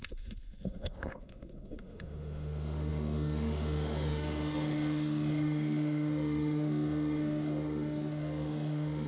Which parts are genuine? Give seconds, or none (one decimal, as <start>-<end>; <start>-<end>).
none